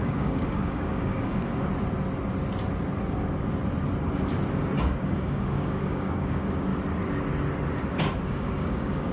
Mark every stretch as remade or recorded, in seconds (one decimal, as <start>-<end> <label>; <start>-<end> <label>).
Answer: 0.0-1.7 remade; 1.7-4.8 recorded; 4.8-6.7 remade; 6.7-8.3 recorded; 8.3-9.1 remade